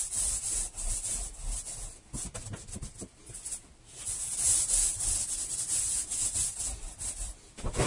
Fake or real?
real